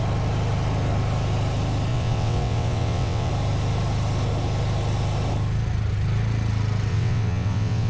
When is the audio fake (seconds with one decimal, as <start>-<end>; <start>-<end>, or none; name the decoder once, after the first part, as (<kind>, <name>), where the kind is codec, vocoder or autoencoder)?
1.9-3.3 (vocoder, WaveNeXt); 6.9-7.9